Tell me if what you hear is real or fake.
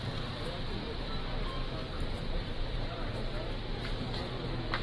fake